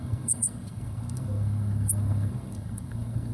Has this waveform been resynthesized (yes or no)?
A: yes